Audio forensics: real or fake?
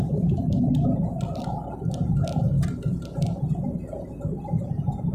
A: real